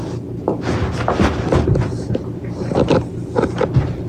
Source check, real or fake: real